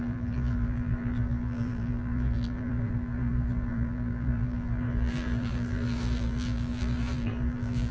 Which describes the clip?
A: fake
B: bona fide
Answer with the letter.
A